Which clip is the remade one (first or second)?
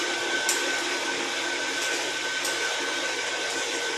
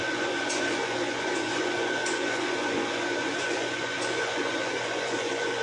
second